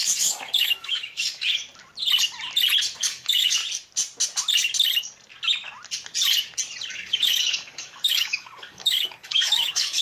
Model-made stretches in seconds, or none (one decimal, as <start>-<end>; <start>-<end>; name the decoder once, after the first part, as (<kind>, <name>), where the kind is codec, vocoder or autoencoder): 0.0-1.6 (codec, DAC); 3.0-3.6; 6.9-10.0